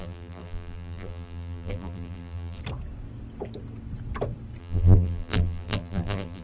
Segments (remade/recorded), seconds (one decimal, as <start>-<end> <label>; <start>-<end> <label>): 0.0-2.6 remade; 2.6-4.6 recorded; 4.6-6.4 remade